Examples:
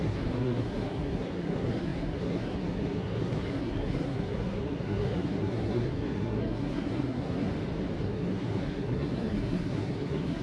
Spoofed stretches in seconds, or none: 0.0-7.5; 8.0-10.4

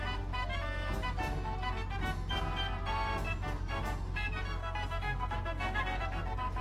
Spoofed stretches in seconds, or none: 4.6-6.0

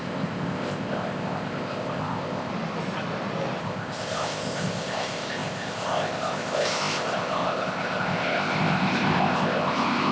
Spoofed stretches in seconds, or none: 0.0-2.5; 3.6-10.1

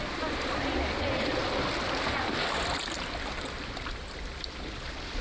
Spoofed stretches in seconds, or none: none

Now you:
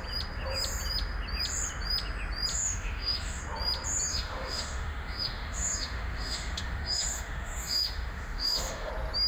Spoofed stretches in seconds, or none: 2.5-3.4; 4.1-8.9